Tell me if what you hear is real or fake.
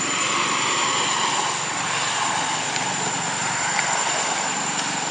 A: real